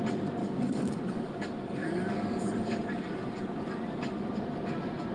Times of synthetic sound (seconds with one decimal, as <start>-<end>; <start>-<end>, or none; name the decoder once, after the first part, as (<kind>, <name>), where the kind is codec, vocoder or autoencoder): 0.4-2.4 (codec, DAC)